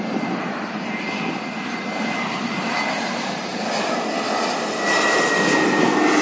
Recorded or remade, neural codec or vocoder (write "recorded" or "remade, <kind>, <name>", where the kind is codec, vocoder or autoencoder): recorded